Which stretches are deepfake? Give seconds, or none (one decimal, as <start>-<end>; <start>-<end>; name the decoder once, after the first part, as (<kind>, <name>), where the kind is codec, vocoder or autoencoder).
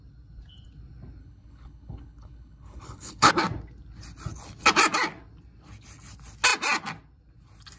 1.2-3.3 (codec, HILCodec)